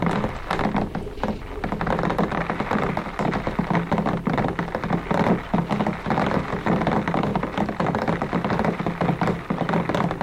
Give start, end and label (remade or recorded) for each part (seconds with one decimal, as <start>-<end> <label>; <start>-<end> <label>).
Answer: 0.0-10.2 recorded